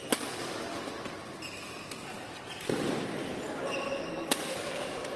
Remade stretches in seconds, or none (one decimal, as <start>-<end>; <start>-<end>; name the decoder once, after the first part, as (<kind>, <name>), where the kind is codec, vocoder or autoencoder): 4.1-4.8 (codec, SNAC)